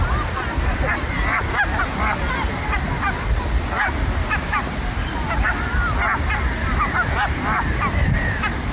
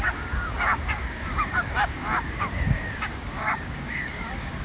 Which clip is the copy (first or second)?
second